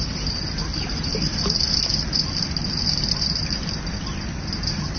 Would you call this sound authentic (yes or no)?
yes